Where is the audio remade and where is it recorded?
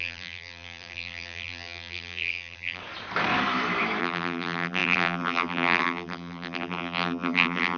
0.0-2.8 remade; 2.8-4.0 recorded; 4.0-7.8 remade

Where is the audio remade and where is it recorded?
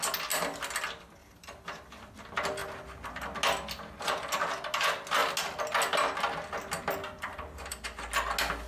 0.0-1.2 recorded; 1.2-1.9 remade; 1.9-7.3 recorded; 7.3-7.8 remade; 7.8-8.7 recorded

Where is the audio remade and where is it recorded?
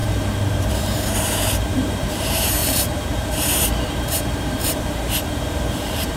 0.0-6.2 remade